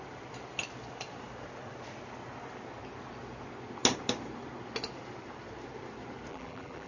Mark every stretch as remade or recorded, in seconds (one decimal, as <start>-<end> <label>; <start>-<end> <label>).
0.0-6.3 recorded; 6.3-6.9 remade